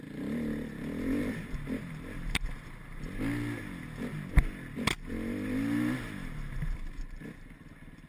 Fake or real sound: real